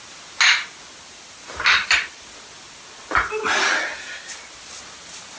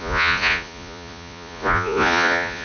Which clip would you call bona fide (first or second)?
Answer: first